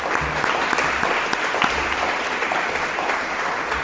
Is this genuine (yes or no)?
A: no